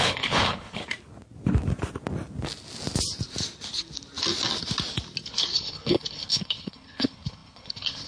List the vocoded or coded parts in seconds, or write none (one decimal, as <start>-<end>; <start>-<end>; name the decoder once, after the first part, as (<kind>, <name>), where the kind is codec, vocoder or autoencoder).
0.0-0.8 (codec, HILCodec); 5.3-8.1